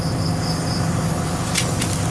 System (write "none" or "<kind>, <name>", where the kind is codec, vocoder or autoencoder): none